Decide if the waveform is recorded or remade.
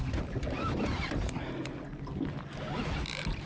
recorded